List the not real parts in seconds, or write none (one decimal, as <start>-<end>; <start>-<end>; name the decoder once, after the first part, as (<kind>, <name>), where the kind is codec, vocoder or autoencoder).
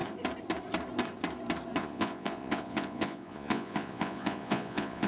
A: 1.8-5.1 (vocoder, Vocos)